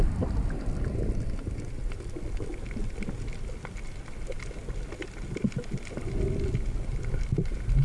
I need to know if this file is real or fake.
real